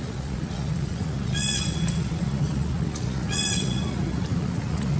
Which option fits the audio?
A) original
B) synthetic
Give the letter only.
B